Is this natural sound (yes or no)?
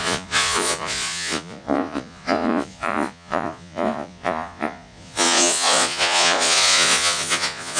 no